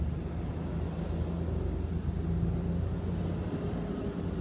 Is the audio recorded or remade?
recorded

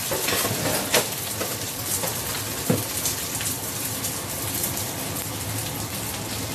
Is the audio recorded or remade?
remade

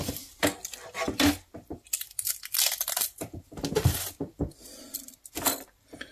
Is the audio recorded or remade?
recorded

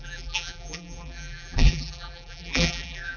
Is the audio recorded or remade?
remade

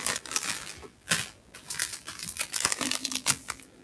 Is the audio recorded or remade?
remade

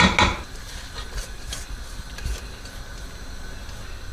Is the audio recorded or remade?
recorded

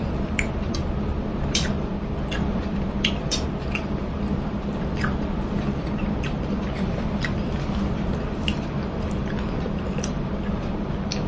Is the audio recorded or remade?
remade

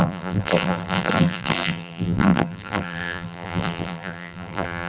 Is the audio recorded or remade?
remade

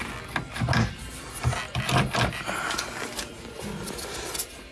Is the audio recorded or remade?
recorded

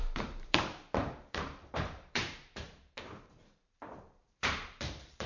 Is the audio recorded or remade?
remade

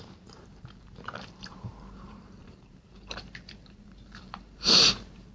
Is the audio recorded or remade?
remade